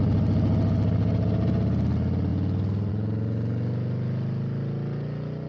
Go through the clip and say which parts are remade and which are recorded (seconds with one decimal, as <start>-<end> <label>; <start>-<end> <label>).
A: 0.0-5.5 recorded